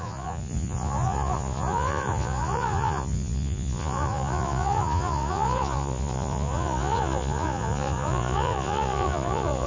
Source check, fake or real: fake